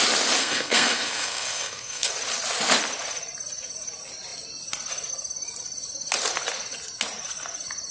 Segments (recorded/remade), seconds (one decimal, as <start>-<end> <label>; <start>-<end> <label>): 0.0-0.4 recorded; 0.4-2.1 remade; 2.1-7.9 recorded